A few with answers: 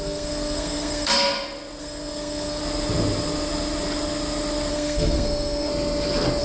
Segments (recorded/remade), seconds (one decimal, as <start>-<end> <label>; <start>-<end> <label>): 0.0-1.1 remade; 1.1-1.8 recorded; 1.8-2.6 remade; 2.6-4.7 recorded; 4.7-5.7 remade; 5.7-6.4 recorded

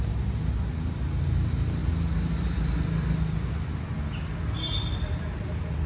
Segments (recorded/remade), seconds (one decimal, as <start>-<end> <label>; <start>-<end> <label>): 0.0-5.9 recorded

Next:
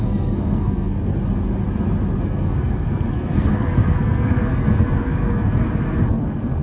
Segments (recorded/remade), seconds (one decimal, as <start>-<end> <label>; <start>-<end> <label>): 0.0-1.1 remade; 1.1-2.3 recorded; 2.3-5.6 remade; 5.6-6.1 recorded; 6.1-6.6 remade